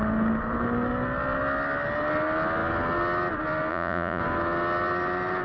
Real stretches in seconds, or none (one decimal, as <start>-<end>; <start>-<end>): 0.0-3.7; 4.2-5.4